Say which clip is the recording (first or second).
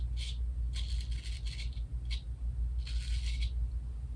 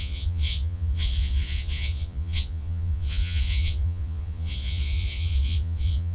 first